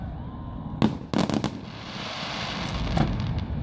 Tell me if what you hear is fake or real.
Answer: real